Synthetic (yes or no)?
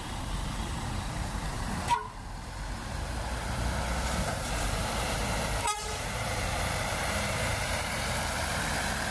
yes